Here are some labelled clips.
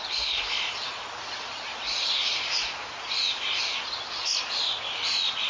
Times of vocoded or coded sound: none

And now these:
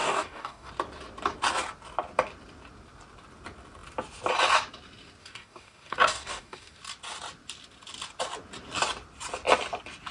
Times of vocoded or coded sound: 0.0-0.7 (codec, DAC); 5.2-6.8

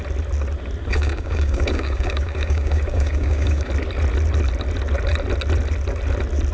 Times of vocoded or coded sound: 0.9-3.7 (codec, DAC)

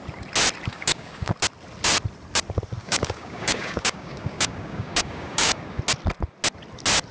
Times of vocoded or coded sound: 0.7-1.3 (codec, DAC); 2.8-5.8

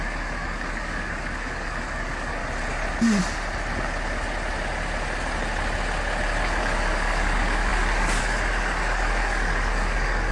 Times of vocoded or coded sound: 0.0-2.4 (codec, DAC); 6.6-10.3